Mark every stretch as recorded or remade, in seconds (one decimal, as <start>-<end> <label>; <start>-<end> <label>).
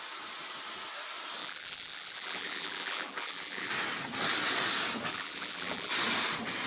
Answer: 0.0-1.4 recorded; 1.4-3.7 remade; 3.7-5.1 recorded; 5.1-5.9 remade; 5.9-6.7 recorded